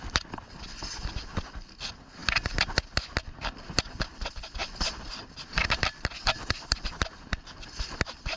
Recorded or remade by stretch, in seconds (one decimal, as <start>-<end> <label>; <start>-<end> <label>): 0.0-4.6 recorded; 4.6-7.0 remade; 7.0-8.4 recorded